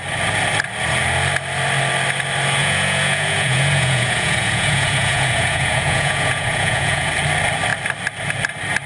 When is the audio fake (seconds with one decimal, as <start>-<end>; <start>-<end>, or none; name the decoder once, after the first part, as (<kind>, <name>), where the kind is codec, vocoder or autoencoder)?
2.6-7.1 (vocoder, Vocos)